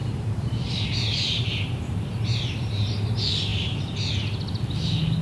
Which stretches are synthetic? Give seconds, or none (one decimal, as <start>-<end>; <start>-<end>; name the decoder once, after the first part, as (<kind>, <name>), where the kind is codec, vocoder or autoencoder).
0.0-1.2 (vocoder, BigVGAN v2); 3.5-4.1

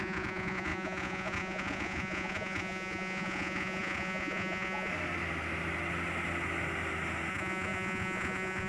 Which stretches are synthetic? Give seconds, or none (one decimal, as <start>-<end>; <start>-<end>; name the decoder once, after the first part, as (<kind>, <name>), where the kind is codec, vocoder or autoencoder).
0.0-4.9 (vocoder, Vocos); 7.3-8.7

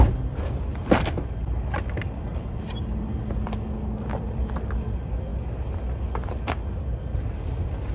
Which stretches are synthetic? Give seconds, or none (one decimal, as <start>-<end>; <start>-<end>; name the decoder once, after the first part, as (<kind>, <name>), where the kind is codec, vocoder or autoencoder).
none

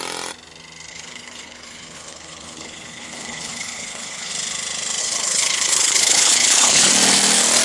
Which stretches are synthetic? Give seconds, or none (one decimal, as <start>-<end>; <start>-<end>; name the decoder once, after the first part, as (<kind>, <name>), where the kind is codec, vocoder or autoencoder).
0.9-4.3 (codec, HILCodec); 5.0-6.9

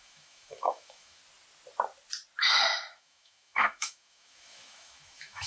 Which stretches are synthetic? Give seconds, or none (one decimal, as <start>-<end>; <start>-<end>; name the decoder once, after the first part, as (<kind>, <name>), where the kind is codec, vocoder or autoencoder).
0.0-1.2 (autoencoder, DAC-VAE); 2.9-5.5

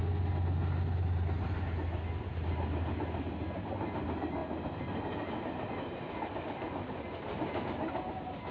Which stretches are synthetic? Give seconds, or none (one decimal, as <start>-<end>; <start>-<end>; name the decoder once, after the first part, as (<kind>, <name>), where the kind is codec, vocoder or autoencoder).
none

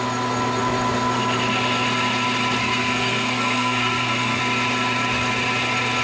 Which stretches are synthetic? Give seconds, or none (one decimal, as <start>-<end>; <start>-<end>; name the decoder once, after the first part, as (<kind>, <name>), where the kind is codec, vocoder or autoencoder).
2.6-4.4 (codec, SNAC)

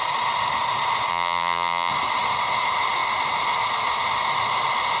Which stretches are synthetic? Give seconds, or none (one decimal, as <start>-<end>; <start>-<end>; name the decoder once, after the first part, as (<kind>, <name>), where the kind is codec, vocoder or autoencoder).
1.1-1.9 (vocoder, BigVGAN v2)